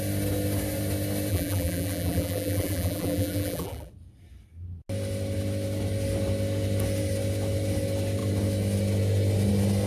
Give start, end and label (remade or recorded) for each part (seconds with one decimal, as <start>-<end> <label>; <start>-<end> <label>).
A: 0.0-1.3 recorded; 1.3-3.9 remade; 3.9-9.9 recorded